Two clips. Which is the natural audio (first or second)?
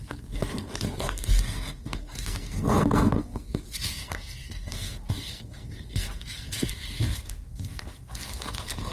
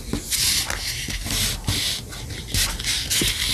second